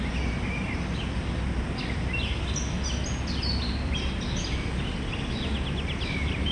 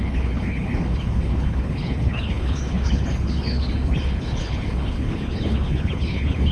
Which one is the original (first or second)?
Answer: first